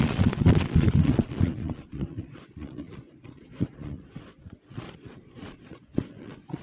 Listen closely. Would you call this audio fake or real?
fake